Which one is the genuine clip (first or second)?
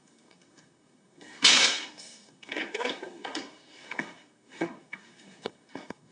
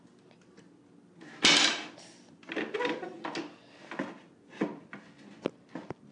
second